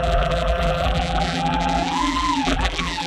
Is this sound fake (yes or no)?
yes